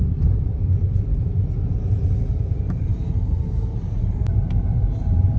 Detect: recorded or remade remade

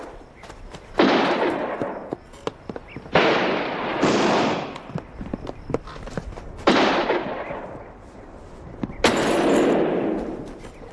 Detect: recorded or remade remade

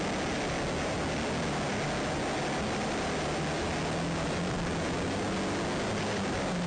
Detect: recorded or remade recorded